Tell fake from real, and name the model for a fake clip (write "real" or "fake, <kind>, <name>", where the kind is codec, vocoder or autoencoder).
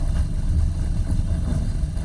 fake, codec, HILCodec